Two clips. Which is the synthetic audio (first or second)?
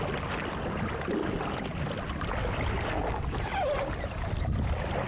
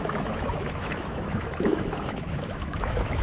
second